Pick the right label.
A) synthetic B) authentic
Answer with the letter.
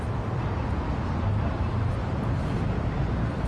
B